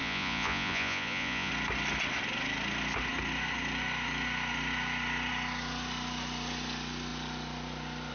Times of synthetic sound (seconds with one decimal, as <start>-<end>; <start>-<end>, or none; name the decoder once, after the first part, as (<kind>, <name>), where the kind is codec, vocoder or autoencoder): 0.0-1.5 (vocoder, Vocos)